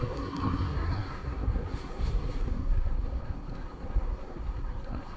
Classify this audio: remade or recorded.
remade